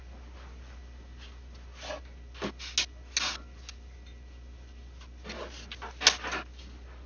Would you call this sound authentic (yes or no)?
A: yes